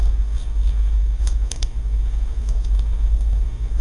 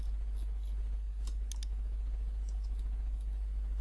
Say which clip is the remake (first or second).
first